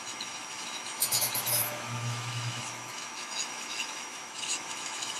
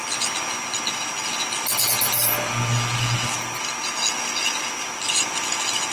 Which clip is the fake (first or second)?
first